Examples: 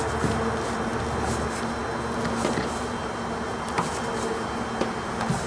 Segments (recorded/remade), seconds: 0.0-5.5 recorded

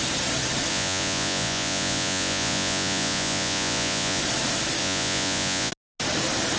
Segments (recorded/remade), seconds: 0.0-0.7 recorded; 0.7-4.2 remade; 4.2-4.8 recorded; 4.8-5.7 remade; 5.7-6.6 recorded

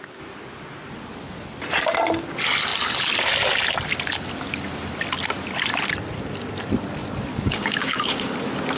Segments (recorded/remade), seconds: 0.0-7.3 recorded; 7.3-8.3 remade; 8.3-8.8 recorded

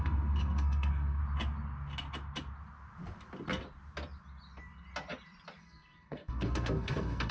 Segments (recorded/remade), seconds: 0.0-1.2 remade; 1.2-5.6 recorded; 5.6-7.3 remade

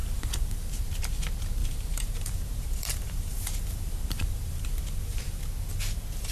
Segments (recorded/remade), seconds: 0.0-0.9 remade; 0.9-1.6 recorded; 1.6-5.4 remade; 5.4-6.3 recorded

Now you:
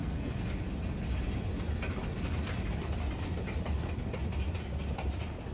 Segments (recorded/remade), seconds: 0.0-0.5 remade; 0.5-5.5 recorded

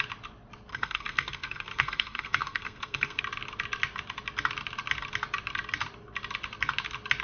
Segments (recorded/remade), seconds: 0.0-0.7 recorded; 0.7-3.2 remade; 3.2-7.2 recorded

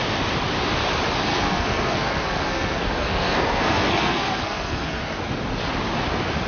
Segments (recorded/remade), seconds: 0.0-1.3 recorded; 1.3-5.2 remade; 5.2-6.5 recorded